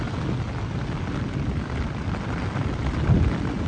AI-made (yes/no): no